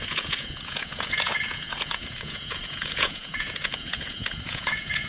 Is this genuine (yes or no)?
no